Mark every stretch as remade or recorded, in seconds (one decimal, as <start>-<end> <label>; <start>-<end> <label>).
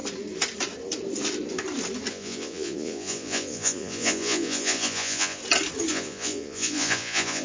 0.0-2.1 recorded; 2.1-5.4 remade; 5.4-5.9 recorded; 5.9-7.4 remade